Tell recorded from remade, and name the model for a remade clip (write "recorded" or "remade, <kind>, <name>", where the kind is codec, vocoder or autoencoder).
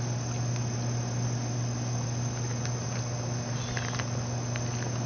recorded